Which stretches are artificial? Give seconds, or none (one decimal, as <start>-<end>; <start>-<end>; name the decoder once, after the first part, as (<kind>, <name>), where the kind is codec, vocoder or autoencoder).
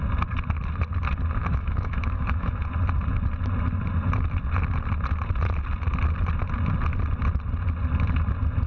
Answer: 1.4-2.5 (autoencoder, DAC-VAE)